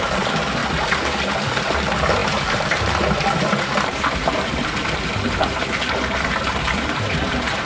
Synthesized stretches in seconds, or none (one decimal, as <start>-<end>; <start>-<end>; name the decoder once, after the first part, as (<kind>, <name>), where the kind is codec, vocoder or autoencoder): 0.0-0.6 (vocoder, BigVGAN v2); 1.4-7.7